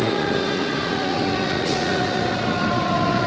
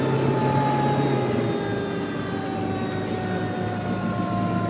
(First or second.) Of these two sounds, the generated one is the first